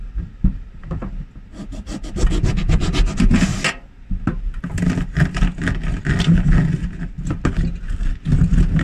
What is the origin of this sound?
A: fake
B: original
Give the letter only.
B